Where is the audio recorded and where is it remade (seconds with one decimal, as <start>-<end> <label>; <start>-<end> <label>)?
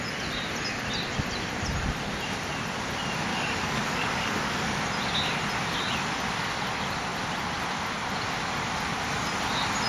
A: 0.0-3.3 recorded; 3.3-4.8 remade; 4.8-9.9 recorded